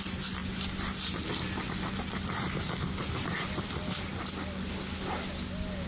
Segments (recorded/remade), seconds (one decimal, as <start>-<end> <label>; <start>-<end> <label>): 0.0-5.9 recorded